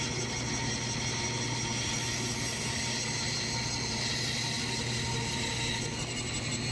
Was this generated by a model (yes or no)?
no